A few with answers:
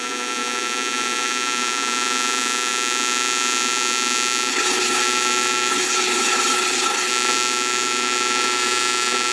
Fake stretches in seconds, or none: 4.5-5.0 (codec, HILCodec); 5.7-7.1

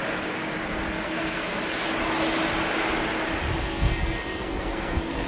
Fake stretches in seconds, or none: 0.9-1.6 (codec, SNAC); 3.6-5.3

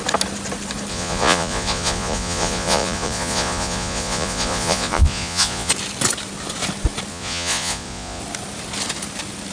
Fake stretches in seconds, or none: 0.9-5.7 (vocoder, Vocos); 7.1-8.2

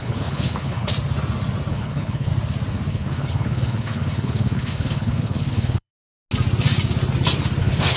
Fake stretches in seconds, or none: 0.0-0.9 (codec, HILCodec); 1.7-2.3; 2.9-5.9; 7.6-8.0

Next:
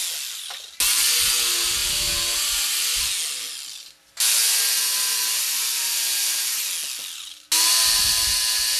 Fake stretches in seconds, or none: 1.8-3.0 (vocoder, BigVGAN v2)

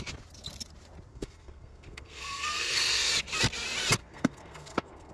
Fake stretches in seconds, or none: 1.1-3.1 (codec, SNAC); 4.0-5.1